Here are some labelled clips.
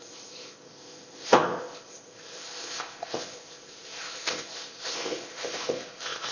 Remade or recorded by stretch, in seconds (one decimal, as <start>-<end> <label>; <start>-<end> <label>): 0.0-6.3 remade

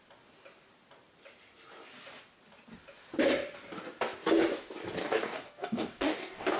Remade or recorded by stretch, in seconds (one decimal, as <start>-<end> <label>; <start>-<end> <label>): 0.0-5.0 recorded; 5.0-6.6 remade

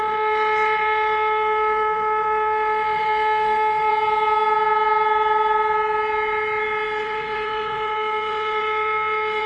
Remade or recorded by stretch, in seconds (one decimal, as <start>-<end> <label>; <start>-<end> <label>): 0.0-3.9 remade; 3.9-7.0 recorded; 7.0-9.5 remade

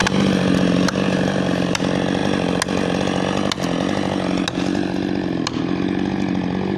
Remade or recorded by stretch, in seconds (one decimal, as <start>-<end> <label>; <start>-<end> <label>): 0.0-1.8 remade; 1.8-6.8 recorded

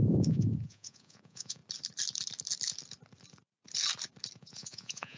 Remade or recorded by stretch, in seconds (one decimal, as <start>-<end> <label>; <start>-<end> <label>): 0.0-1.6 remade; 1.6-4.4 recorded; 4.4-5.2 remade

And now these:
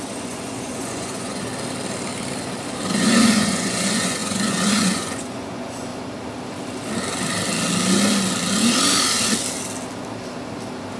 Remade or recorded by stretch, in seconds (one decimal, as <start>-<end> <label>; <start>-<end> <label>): 0.0-1.5 remade; 1.5-3.0 recorded; 3.0-5.9 remade; 5.9-11.0 recorded

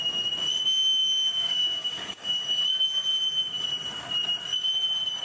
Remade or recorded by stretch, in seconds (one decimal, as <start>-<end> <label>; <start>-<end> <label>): 0.0-1.0 recorded; 1.0-2.4 remade; 2.4-5.2 recorded

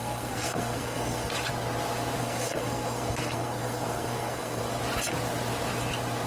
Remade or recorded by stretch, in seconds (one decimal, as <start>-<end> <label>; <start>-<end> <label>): 0.0-1.3 remade; 1.3-2.2 recorded; 2.2-4.6 remade; 4.6-6.3 recorded